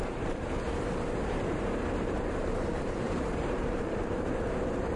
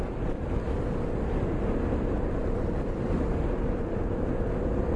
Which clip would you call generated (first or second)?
first